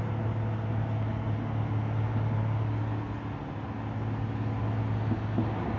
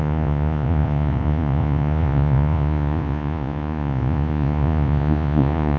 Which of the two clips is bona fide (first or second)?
first